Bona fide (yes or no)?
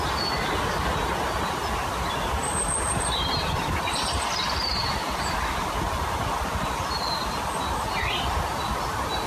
yes